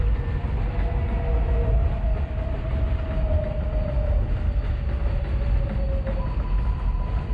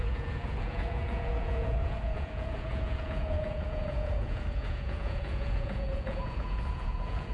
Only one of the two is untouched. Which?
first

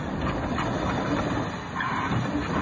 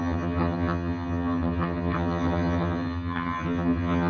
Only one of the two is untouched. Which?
first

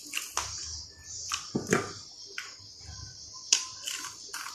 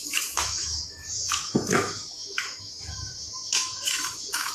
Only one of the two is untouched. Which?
first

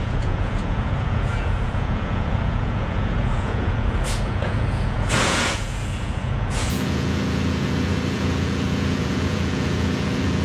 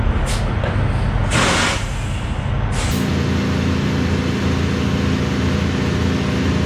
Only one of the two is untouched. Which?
second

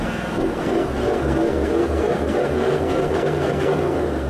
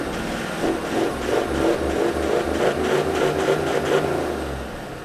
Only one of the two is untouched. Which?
second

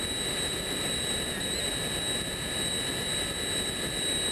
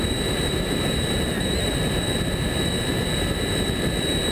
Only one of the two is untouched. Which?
first